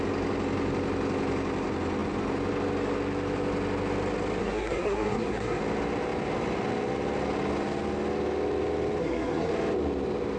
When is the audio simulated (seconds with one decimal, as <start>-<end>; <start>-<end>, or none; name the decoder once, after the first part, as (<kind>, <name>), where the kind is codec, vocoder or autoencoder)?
4.4-5.6 (codec, SNAC); 9.0-9.5